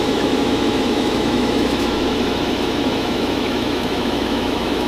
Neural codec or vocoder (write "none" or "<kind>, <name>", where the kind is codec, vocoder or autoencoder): autoencoder, DAC-VAE